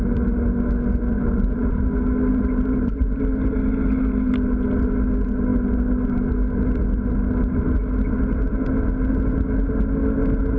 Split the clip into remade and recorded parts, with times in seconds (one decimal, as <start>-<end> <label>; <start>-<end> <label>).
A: 0.0-1.1 recorded; 1.1-1.9 remade; 1.9-2.3 recorded; 2.3-3.2 remade; 3.2-10.6 recorded